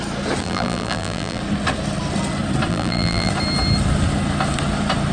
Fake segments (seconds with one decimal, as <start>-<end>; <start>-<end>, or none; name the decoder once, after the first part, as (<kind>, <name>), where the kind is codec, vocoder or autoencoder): 0.4-1.4 (vocoder, BigVGAN v2); 2.7-3.3